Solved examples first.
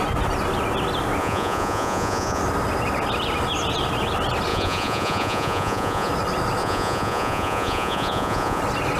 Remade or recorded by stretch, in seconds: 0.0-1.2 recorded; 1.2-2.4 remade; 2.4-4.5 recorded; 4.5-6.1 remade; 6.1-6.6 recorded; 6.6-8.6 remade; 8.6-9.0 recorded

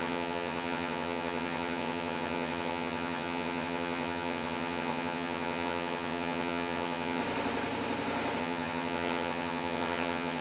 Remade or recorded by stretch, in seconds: 0.0-7.2 remade; 7.2-8.4 recorded; 8.4-10.4 remade

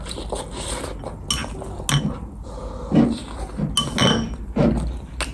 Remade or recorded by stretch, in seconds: 0.0-5.3 recorded

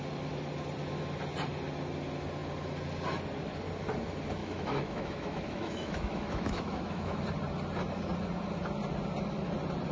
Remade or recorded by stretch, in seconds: 0.0-4.4 recorded; 4.4-7.2 remade; 7.2-9.9 recorded